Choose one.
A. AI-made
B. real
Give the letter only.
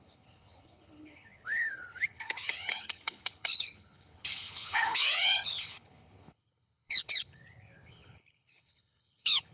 A